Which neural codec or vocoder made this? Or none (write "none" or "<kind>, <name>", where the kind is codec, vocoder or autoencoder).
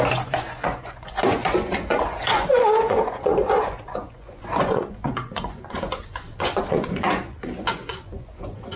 vocoder, Vocos